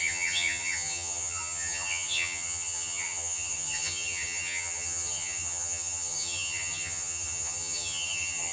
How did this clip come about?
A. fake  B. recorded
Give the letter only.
A